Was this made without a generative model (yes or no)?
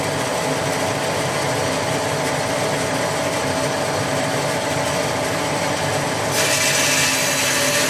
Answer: yes